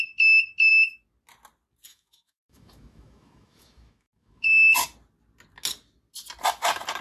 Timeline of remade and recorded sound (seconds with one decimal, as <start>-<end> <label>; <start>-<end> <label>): 0.0-1.9 recorded; 1.9-4.7 remade; 4.7-7.0 recorded